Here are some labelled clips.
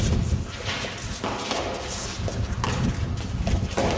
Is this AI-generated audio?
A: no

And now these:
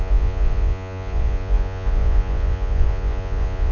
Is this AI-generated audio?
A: yes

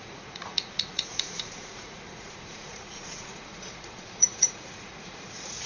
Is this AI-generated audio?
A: yes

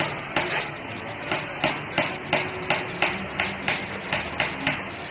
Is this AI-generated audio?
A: no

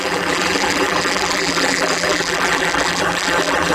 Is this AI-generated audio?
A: yes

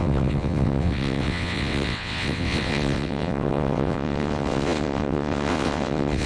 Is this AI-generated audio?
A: yes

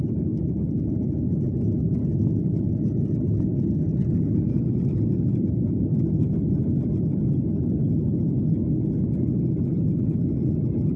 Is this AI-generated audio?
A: no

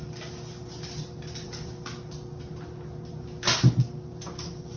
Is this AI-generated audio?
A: no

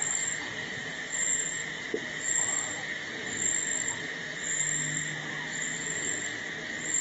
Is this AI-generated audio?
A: no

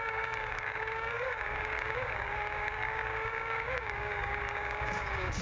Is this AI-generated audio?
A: yes